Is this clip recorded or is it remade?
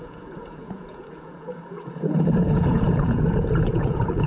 remade